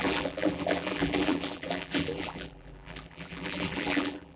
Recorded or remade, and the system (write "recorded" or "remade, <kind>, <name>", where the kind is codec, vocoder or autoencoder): remade, vocoder, BigVGAN v2